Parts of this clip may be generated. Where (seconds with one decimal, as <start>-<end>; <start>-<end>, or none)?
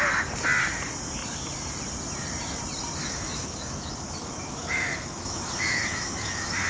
3.0-6.7